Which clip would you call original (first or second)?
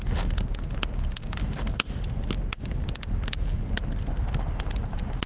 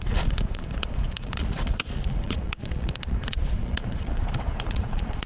first